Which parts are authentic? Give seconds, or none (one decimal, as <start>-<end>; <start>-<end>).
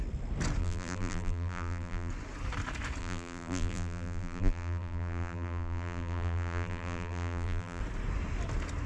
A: 0.0-0.6; 2.1-3.0; 7.8-8.9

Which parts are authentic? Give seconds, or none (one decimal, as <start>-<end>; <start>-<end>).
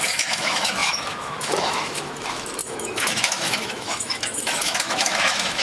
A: none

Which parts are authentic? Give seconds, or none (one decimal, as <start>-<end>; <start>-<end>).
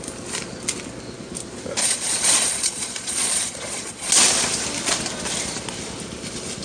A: 0.0-1.8; 4.1-6.6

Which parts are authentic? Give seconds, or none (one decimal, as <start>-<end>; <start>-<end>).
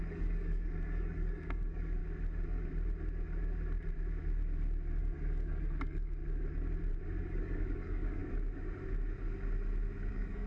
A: 2.0-5.0; 6.2-7.2; 8.2-10.1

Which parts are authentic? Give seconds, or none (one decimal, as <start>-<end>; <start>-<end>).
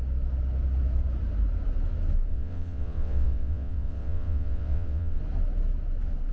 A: 0.0-2.3; 5.2-6.3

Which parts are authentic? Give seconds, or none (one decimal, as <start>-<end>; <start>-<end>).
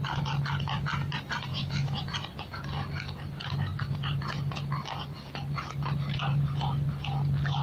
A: 0.0-1.5; 2.0-7.6